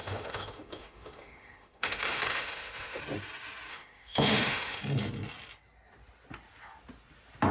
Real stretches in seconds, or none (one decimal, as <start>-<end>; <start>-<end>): 3.0-3.7; 4.8-7.5